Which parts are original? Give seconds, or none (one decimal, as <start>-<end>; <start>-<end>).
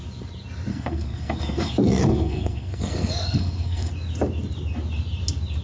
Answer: 0.0-0.7; 3.9-5.6